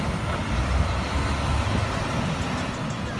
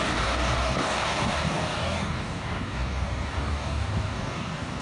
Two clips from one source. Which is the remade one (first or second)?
second